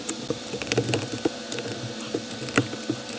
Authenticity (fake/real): real